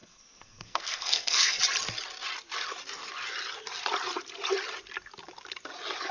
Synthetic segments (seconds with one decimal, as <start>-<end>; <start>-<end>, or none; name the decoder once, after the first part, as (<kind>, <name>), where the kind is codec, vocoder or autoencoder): 0.0-1.6 (codec, SNAC)